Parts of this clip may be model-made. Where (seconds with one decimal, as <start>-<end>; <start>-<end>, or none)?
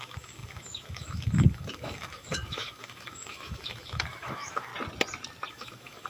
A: 0.0-4.7; 5.5-6.1